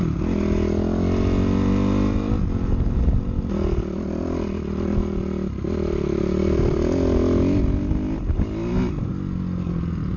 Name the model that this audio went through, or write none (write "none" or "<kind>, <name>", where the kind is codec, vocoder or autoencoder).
none